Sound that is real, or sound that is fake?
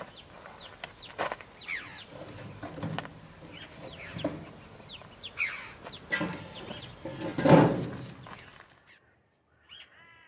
real